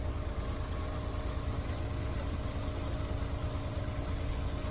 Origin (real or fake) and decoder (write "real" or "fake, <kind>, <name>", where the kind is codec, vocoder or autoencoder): real